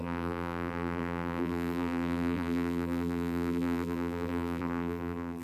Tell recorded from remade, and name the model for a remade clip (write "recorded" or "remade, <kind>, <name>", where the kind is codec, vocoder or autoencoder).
remade, vocoder, BigVGAN v2